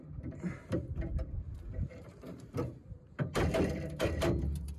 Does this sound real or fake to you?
fake